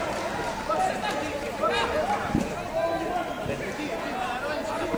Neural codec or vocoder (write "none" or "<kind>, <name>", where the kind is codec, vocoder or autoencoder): none